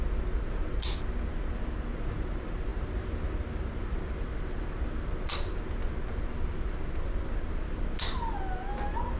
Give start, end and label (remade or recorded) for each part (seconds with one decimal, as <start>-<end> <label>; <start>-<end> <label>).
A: 0.0-9.2 recorded